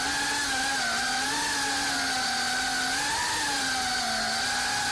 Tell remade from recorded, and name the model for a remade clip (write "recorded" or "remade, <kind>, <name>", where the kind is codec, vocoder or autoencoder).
recorded